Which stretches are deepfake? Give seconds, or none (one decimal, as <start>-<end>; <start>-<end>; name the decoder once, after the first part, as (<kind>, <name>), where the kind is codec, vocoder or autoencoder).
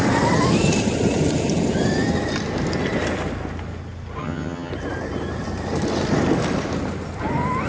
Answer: 4.2-4.7 (vocoder, HiFi-GAN)